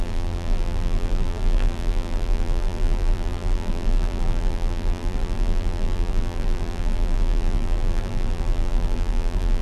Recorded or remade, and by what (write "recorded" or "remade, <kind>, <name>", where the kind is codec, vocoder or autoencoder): remade, vocoder, BigVGAN v2